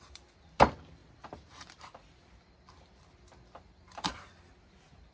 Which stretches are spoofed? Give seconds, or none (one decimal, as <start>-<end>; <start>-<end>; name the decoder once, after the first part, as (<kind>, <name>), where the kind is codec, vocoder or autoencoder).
none